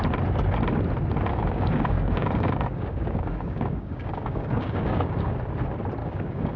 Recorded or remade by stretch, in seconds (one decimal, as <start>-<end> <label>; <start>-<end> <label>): 0.0-1.3 recorded; 1.3-5.3 remade; 5.3-6.0 recorded; 6.0-6.6 remade